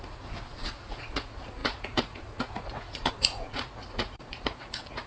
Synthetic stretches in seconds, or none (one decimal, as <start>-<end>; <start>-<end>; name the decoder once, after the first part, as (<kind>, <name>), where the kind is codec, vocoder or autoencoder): 0.0-5.1 (vocoder, Vocos)